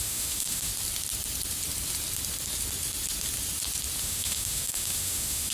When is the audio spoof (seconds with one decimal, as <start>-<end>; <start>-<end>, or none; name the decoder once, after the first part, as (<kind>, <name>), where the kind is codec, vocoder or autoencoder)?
0.0-0.7 (autoencoder, DAC-VAE); 4.0-5.5